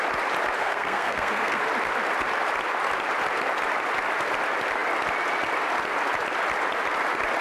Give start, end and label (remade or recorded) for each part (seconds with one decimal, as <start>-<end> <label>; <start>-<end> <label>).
0.0-0.6 recorded; 0.6-1.6 remade; 1.6-7.4 recorded